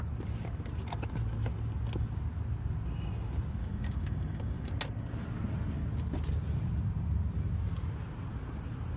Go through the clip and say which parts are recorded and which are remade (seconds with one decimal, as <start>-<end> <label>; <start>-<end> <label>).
0.0-3.6 recorded; 3.6-4.7 remade; 4.7-9.0 recorded